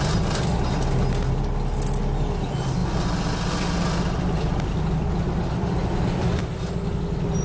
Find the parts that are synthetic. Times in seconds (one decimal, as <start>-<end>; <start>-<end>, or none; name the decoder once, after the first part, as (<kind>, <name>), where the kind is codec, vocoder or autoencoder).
none